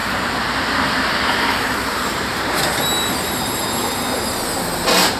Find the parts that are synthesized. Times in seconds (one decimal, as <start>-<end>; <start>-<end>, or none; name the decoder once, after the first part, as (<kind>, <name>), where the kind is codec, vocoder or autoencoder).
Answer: 0.0-2.6 (vocoder, BigVGAN v2)